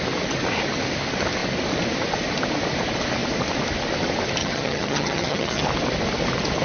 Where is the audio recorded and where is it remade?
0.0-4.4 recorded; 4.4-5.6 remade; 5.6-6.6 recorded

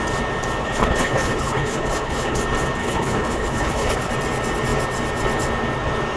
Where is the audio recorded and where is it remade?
0.0-0.6 recorded; 0.6-2.4 remade; 2.4-2.8 recorded; 2.8-4.1 remade; 4.1-6.2 recorded

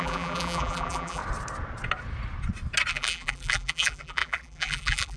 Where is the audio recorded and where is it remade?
0.0-1.2 remade; 1.2-2.9 recorded; 2.9-5.2 remade

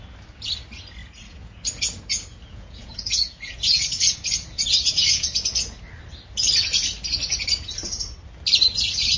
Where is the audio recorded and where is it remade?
0.0-1.0 recorded; 1.0-1.6 remade; 1.6-2.1 recorded; 2.1-5.5 remade; 5.5-9.2 recorded